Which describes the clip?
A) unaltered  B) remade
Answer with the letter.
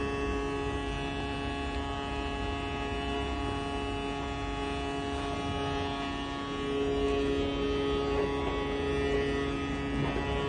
A